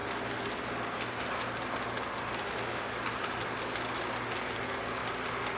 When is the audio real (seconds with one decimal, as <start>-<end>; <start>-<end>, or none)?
0.0-5.6